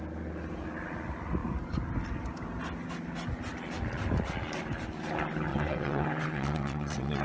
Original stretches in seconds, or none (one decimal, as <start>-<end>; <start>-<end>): 0.0-5.5